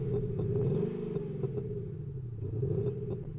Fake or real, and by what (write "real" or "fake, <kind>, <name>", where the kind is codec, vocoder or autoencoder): real